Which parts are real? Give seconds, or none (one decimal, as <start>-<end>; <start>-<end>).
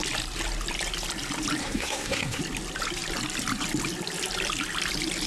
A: 0.0-1.6; 2.4-5.3